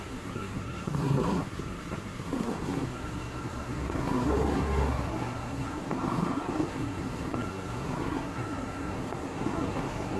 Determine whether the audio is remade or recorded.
remade